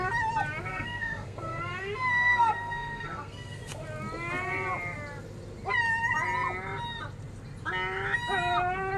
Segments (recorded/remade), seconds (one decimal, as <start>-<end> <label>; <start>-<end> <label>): 0.0-0.7 recorded; 0.7-3.6 remade; 3.6-9.0 recorded